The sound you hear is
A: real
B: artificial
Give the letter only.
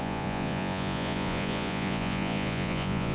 B